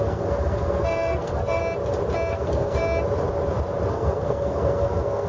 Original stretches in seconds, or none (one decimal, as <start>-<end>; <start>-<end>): 1.6-2.3; 2.8-3.9